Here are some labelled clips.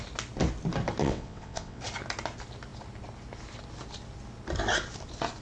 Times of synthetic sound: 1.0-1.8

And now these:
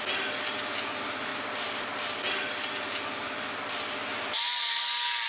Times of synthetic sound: none

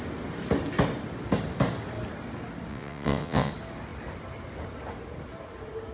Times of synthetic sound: 2.7-3.5

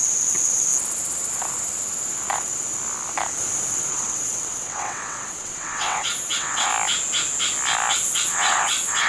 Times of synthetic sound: 0.0-0.7; 3.9-6.7; 7.9-9.1

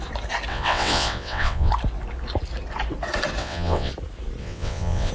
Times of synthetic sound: 0.5-1.7; 3.4-3.9; 4.4-5.1